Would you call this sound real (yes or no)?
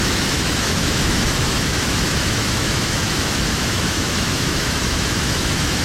no